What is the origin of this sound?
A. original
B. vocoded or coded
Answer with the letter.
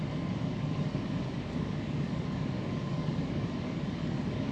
B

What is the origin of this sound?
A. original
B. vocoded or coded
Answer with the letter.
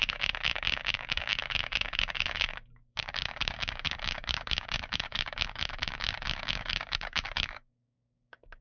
B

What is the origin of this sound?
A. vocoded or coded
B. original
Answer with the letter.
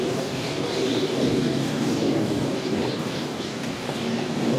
A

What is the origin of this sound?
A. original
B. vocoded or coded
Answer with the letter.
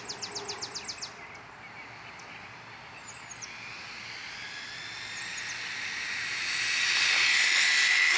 A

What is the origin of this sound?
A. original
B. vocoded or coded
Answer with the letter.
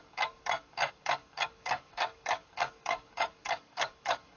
B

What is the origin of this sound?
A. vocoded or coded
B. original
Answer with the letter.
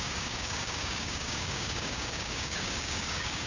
A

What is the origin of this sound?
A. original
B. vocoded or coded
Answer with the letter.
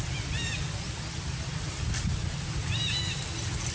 A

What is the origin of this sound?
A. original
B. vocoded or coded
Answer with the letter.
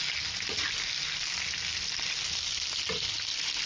A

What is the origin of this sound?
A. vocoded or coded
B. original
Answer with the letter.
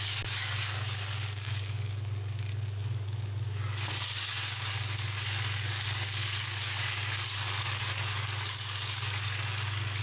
A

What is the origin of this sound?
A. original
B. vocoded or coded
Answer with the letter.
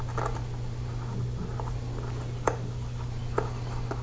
A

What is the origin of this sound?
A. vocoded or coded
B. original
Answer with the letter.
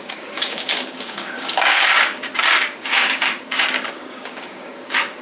A